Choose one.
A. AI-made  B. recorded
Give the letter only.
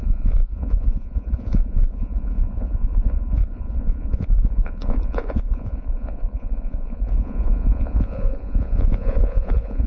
A